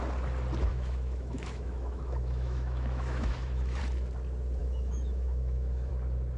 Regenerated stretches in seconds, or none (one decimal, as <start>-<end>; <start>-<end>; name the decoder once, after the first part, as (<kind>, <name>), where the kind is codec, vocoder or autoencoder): 0.7-3.8 (autoencoder, DAC-VAE); 4.6-5.9